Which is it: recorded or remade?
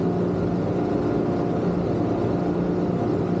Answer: recorded